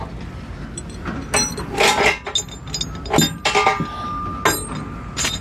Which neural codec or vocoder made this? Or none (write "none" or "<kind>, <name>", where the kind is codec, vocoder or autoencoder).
none